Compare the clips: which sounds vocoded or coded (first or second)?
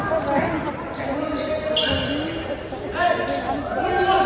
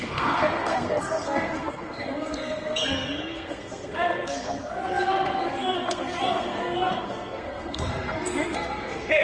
second